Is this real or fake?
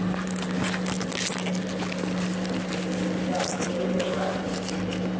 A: real